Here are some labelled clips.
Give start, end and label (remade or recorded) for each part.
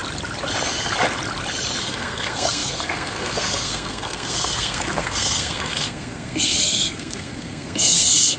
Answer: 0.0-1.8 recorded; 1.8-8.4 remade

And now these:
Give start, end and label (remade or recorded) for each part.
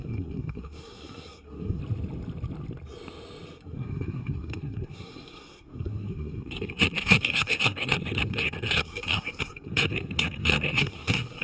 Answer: 0.0-1.8 remade; 1.8-3.6 recorded; 3.6-11.4 remade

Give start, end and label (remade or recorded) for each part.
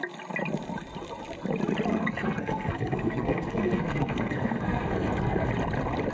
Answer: 0.0-1.9 recorded; 1.9-5.5 remade; 5.5-6.1 recorded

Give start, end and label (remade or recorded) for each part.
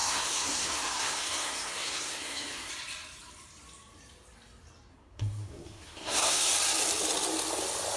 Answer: 0.0-2.7 remade; 2.7-4.9 recorded; 4.9-6.5 remade; 6.5-8.0 recorded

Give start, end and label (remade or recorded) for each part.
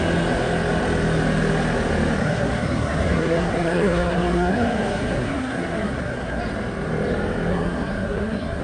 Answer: 0.0-2.2 recorded; 2.2-6.4 remade; 6.4-7.5 recorded; 7.5-8.6 remade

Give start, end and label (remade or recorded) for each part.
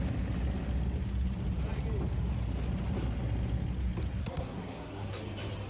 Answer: 0.0-4.2 recorded; 4.2-5.2 remade; 5.2-5.7 recorded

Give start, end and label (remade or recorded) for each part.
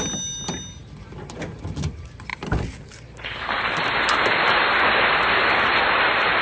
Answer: 0.0-6.4 recorded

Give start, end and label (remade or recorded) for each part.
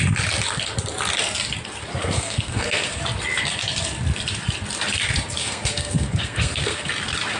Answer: 0.0-2.0 recorded; 2.0-3.0 remade; 3.0-5.4 recorded; 5.4-6.9 remade; 6.9-7.4 recorded